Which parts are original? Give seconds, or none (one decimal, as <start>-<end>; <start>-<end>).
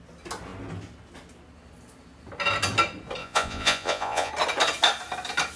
0.0-3.2; 4.3-5.6